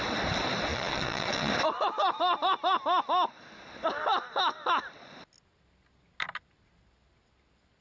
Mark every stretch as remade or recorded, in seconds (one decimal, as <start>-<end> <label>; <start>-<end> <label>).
0.0-0.7 recorded; 0.7-1.5 remade; 1.5-7.8 recorded